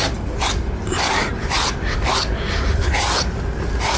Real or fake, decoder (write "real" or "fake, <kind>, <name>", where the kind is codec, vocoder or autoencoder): real